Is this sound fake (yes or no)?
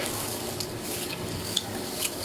yes